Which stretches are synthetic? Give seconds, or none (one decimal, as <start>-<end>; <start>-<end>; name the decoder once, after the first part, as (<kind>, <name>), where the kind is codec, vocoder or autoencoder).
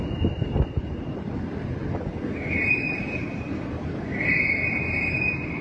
none